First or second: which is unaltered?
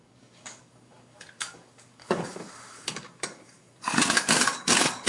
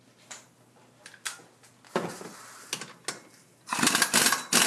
second